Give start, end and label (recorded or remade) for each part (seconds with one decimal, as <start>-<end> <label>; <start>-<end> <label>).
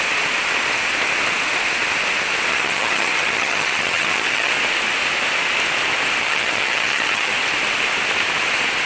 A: 0.0-2.5 recorded; 2.5-4.5 remade; 4.5-6.2 recorded; 6.2-7.3 remade; 7.3-8.9 recorded